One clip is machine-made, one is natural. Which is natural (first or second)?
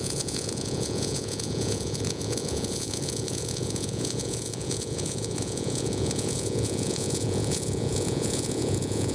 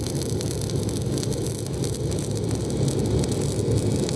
second